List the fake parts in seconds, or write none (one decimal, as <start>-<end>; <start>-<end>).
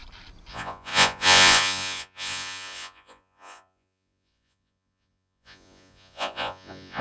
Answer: 0.5-7.0